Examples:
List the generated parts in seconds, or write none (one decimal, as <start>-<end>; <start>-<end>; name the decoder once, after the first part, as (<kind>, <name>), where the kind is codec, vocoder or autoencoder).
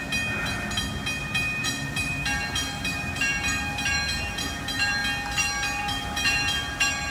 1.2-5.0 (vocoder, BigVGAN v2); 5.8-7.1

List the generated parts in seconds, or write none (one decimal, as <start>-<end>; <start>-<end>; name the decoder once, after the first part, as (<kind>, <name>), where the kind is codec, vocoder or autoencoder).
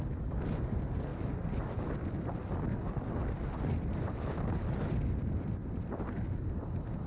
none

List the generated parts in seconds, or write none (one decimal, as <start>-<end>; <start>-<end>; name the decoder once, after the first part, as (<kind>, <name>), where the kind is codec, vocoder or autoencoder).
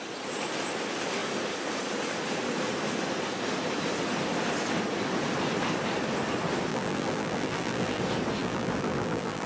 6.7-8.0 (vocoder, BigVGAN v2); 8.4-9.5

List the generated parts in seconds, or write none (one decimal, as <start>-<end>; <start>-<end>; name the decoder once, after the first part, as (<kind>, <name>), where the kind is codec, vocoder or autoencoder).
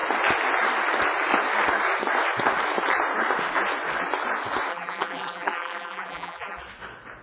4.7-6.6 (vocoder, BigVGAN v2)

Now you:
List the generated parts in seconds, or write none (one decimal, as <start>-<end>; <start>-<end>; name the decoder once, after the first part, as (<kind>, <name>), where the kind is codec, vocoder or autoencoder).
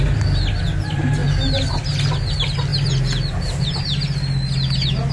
none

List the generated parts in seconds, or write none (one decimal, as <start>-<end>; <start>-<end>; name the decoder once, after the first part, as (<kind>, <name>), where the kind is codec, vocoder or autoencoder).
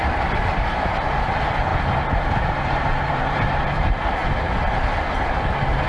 0.0-4.2 (vocoder, BigVGAN v2)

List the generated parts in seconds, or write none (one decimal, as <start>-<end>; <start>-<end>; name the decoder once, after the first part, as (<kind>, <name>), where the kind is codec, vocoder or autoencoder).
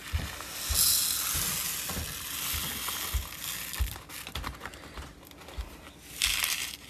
none